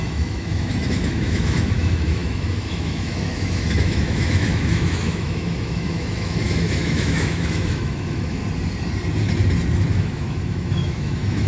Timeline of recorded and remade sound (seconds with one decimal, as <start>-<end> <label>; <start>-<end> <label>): 0.0-8.4 remade; 8.4-9.9 recorded; 9.9-11.5 remade